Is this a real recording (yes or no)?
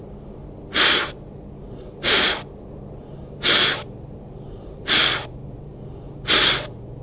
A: yes